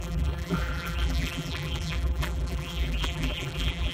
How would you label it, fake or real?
fake